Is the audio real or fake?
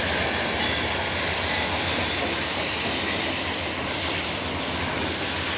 real